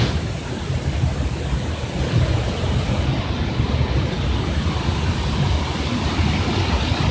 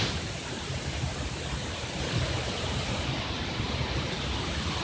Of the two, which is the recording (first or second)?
first